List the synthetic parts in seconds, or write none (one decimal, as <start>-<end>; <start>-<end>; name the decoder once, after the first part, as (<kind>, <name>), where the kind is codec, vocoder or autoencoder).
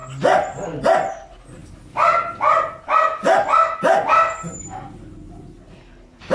none